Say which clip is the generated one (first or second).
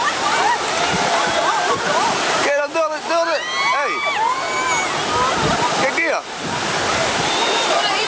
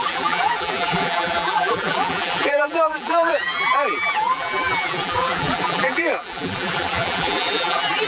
second